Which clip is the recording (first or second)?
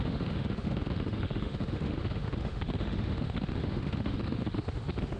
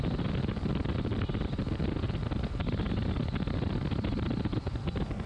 second